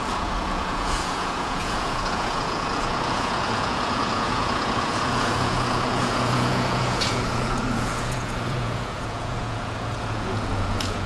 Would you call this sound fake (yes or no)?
yes